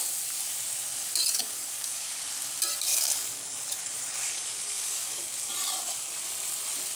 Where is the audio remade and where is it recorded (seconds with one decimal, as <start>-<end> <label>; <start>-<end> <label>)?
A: 0.0-1.4 recorded; 1.4-2.2 remade; 2.2-2.9 recorded; 2.9-5.5 remade; 5.5-7.0 recorded